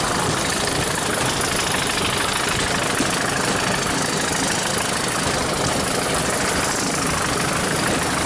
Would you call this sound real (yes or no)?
yes